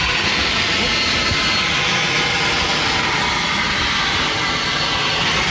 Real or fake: real